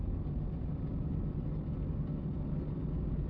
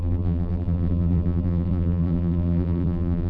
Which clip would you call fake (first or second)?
second